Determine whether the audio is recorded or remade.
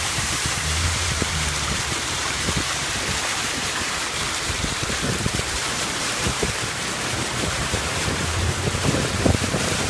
remade